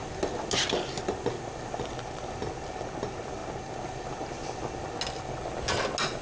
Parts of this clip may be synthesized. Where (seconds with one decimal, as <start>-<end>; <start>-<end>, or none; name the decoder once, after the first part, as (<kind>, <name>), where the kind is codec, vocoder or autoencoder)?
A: none